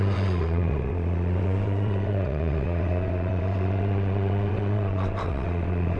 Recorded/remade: remade